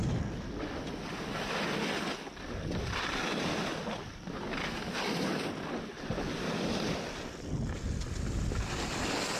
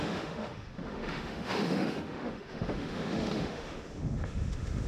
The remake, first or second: second